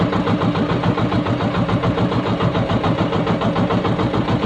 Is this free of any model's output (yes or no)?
yes